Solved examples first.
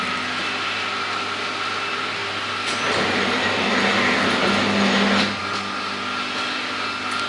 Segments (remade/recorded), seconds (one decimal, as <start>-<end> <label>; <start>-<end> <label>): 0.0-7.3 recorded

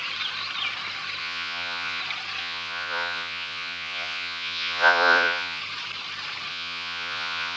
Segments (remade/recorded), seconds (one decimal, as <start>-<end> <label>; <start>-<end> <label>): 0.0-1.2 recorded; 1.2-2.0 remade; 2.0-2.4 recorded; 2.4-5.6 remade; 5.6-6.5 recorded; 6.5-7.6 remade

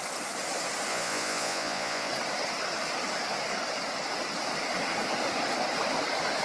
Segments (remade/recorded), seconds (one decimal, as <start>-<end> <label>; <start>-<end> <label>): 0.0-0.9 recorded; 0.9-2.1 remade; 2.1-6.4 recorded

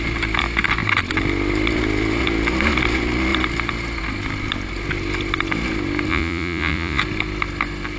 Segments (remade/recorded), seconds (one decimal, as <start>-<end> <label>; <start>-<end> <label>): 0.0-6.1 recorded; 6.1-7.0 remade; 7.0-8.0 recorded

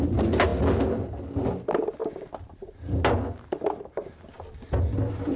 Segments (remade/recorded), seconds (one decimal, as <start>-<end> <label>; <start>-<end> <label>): 0.0-5.4 recorded